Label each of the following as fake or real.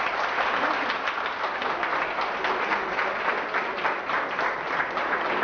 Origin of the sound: real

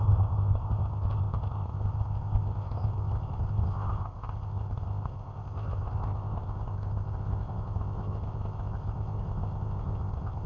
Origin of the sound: fake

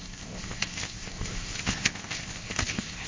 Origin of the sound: fake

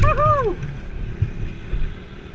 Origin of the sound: real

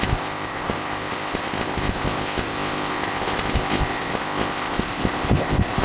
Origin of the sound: fake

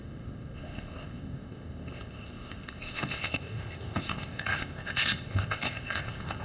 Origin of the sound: fake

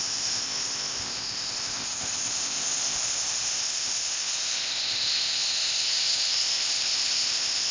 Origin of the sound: fake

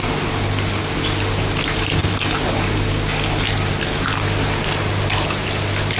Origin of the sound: real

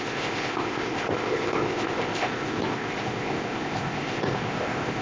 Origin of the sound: fake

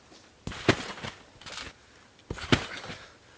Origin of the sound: real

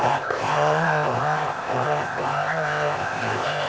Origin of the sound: fake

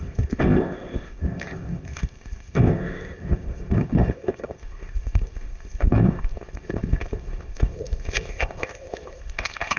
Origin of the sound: fake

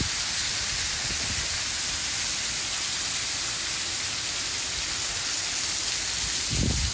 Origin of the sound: real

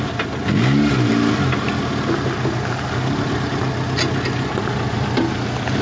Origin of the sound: real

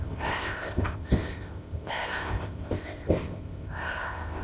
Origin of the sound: fake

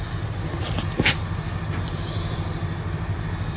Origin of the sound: real